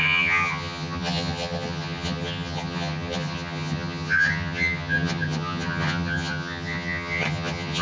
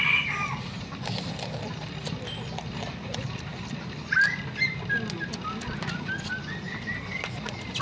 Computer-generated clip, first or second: first